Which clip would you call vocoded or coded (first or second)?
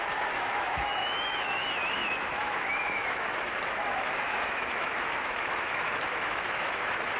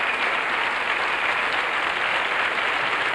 first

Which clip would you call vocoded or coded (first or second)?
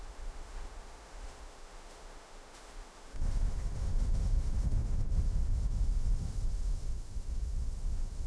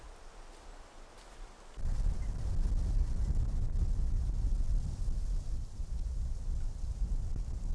first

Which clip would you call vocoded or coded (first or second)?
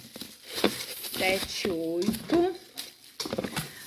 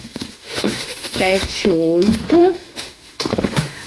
second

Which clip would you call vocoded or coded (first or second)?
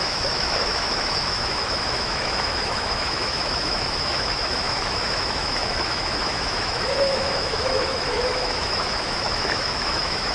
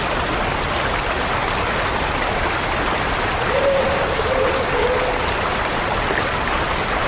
first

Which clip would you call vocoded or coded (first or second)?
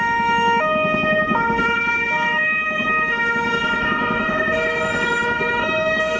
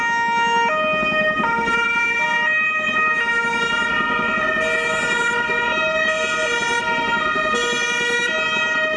first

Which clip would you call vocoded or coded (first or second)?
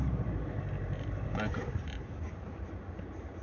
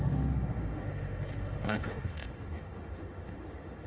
second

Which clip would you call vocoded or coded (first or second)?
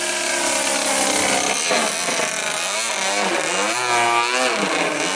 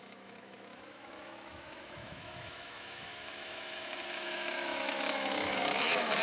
second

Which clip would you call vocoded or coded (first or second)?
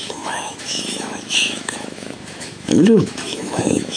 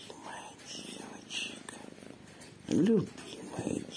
first